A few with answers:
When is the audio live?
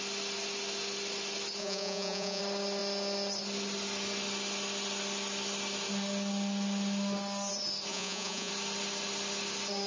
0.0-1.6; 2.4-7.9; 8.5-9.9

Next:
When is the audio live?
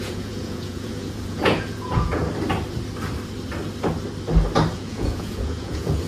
2.2-4.7